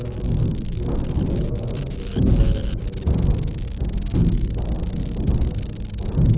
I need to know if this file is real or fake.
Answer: real